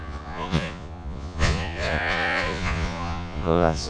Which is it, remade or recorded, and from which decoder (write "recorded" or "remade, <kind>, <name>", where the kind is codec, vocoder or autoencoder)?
remade, vocoder, Vocos